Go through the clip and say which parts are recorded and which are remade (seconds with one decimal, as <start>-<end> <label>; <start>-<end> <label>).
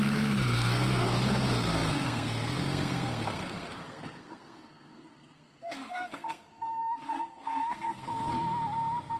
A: 0.0-8.3 remade; 8.3-9.2 recorded